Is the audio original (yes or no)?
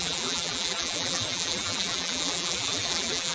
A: no